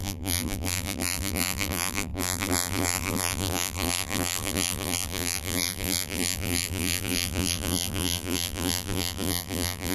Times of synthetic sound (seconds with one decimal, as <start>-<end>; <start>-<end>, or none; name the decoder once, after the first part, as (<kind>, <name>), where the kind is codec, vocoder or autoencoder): 0.0-9.9 (vocoder, BigVGAN v2)